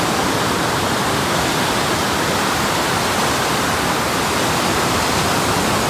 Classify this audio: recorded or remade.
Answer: remade